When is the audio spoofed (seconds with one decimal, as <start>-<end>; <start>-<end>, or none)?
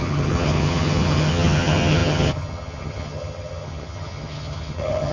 0.0-5.1